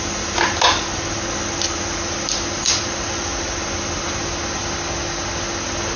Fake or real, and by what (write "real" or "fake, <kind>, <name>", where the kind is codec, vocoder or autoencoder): real